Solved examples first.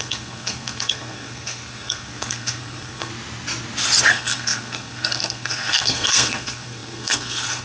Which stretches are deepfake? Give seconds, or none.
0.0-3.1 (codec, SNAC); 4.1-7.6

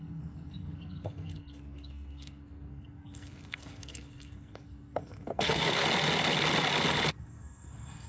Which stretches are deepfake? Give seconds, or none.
0.0-5.8 (codec, SNAC); 7.2-8.1

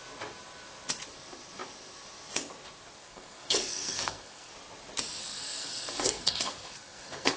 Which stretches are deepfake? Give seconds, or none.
3.0-4.5 (codec, SNAC); 5.2-7.4

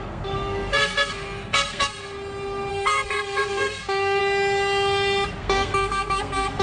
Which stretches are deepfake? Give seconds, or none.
0.0-1.9 (codec, SNAC); 2.7-4.2; 5.4-6.6

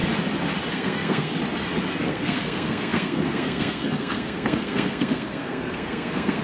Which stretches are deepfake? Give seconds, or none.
0.7-1.3 (codec, SNAC); 2.0-6.4